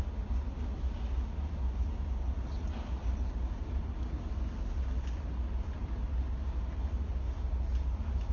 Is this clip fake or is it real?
real